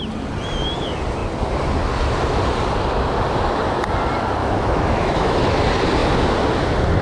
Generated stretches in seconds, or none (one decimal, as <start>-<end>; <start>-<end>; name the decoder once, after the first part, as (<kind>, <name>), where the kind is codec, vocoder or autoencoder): 4.4-5.4 (autoencoder, DAC-VAE)